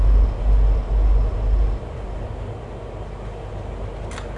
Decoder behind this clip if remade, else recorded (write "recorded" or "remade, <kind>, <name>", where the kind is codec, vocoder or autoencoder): recorded